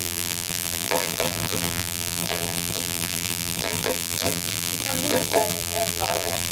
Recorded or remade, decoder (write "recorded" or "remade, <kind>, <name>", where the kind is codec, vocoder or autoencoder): remade, vocoder, BigVGAN v2